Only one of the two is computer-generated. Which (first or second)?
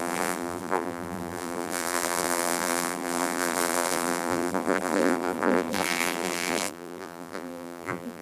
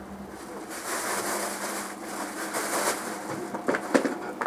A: first